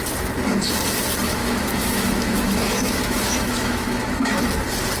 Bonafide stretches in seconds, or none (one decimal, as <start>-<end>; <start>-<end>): 0.0-1.4; 4.4-5.0

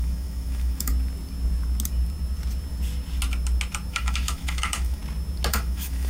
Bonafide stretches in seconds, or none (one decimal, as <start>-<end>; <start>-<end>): 0.9-3.9; 5.0-5.5

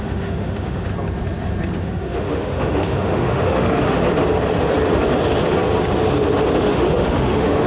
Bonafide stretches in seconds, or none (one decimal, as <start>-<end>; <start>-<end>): 0.9-1.8; 4.0-6.6

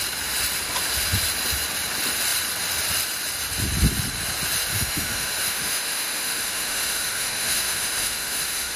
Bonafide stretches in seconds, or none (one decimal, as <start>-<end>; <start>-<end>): 0.0-4.7

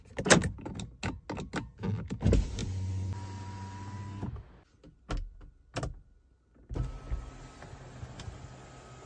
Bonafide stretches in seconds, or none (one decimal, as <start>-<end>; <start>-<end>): 0.0-9.1